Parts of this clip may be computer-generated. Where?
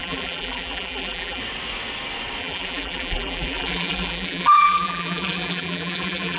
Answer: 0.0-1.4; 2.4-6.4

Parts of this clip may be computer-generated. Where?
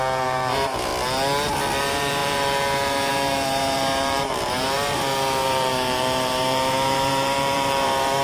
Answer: 0.0-0.9; 1.8-8.2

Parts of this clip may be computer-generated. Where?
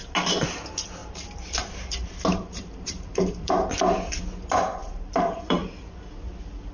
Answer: 1.0-3.7; 4.8-5.9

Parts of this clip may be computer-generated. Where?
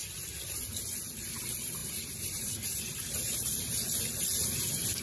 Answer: 0.8-5.0